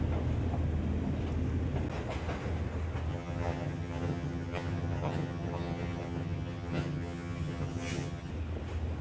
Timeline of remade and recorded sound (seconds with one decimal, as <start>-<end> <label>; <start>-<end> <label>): 0.0-3.1 recorded; 3.1-8.3 remade; 8.3-9.0 recorded